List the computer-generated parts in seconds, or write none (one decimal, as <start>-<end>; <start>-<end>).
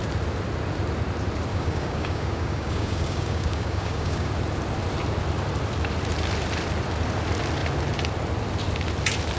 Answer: 1.5-4.3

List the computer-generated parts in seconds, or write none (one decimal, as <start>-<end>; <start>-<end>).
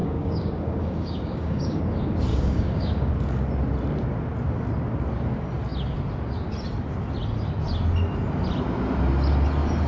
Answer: 0.0-1.8; 2.3-3.1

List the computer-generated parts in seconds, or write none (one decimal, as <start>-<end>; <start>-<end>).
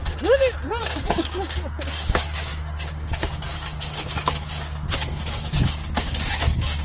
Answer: 0.8-6.8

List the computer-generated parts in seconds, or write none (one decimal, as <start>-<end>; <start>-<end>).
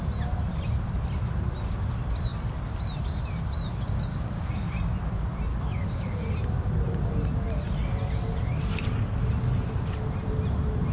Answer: 4.1-4.7; 5.5-6.2